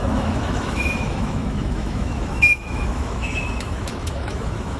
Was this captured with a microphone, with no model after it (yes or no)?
no